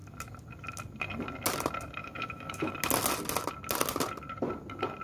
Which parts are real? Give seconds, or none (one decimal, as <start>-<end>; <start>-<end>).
0.0-2.0; 2.7-5.0